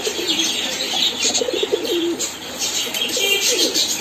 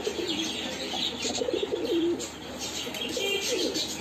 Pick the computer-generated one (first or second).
first